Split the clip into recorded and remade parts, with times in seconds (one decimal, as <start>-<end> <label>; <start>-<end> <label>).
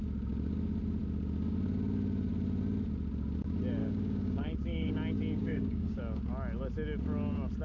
0.0-3.8 recorded; 3.8-4.9 remade; 4.9-5.4 recorded; 5.4-6.0 remade; 6.0-7.6 recorded